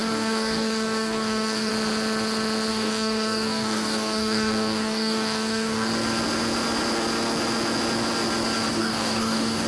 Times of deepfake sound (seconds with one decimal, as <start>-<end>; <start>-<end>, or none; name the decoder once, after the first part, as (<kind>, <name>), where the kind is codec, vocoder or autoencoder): 0.0-1.7 (codec, DAC); 2.7-5.9; 8.7-9.7